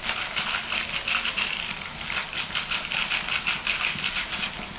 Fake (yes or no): no